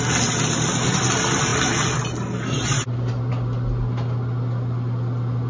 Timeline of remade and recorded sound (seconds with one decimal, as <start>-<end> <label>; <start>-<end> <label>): 0.0-5.5 recorded